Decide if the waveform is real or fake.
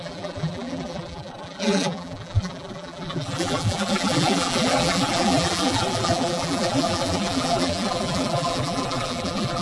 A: fake